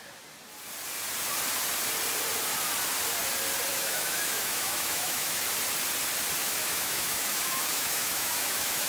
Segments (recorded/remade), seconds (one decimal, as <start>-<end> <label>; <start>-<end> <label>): 0.0-3.7 recorded; 3.7-5.4 remade; 5.4-6.4 recorded; 6.4-8.9 remade